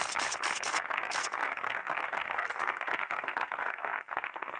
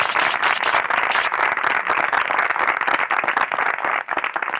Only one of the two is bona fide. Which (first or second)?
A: second